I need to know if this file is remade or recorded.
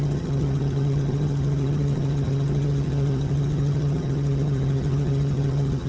remade